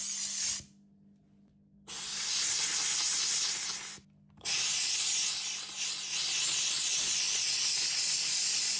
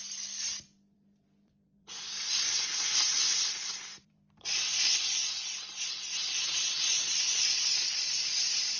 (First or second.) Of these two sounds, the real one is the first